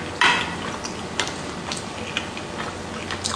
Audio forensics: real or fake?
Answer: real